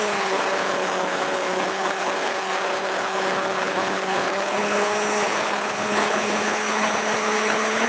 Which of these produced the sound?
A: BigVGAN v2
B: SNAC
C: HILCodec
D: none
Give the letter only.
C